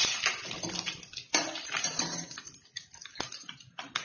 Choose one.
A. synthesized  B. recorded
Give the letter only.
B